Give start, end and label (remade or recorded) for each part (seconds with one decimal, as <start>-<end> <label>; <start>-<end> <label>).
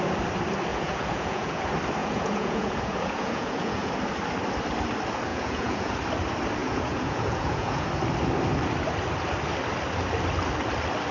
0.0-0.7 recorded; 0.7-1.6 remade; 1.6-2.0 recorded; 2.0-3.9 remade; 3.9-5.3 recorded; 5.3-6.0 remade; 6.0-6.6 recorded; 6.6-7.9 remade; 7.9-11.1 recorded